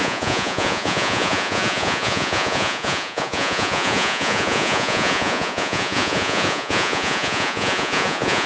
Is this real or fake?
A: fake